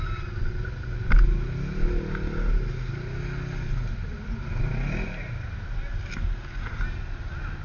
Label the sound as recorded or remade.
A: recorded